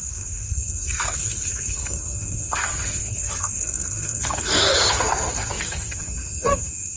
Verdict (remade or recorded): remade